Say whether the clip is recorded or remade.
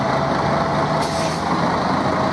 recorded